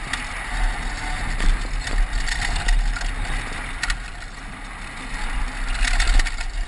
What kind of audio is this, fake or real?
real